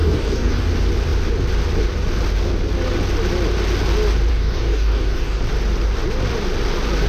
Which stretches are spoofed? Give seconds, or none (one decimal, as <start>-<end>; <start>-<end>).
0.0-0.7; 4.3-5.4